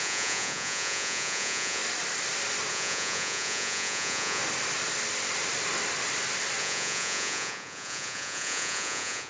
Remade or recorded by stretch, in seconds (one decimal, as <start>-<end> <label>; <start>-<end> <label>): 0.0-1.8 remade; 1.8-2.7 recorded; 2.7-4.4 remade; 4.4-6.6 recorded; 6.6-9.3 remade